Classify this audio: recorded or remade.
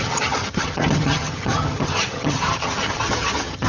remade